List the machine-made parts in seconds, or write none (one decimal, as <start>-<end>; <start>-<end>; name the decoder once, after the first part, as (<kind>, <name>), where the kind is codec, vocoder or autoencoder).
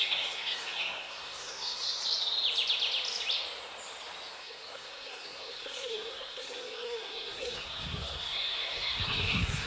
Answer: 0.0-2.0 (codec, SNAC); 4.4-9.7